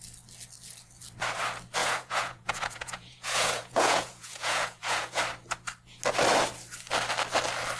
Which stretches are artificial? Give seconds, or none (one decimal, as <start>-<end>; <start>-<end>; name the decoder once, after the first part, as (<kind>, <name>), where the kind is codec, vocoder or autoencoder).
1.8-5.2 (vocoder, Vocos)